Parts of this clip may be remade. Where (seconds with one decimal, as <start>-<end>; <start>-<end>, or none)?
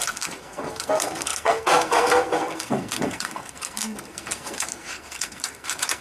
0.0-6.0